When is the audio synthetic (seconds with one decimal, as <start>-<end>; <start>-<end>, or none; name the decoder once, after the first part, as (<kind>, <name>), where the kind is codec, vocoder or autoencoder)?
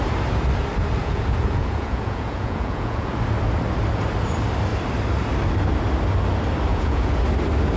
1.0-3.1 (vocoder, Vocos); 6.7-7.2